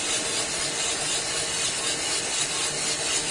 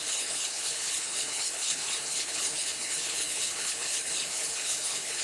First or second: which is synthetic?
second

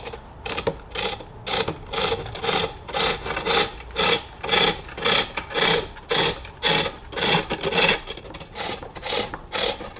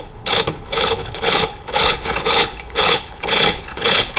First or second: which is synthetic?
second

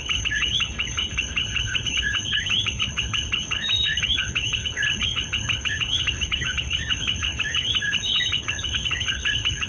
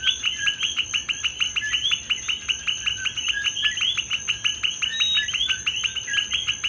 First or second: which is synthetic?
first